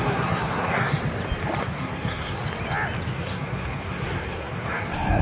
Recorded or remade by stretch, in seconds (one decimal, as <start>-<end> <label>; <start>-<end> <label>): 0.0-1.0 remade; 1.0-1.6 recorded; 1.6-2.4 remade; 2.4-3.1 recorded; 3.1-5.2 remade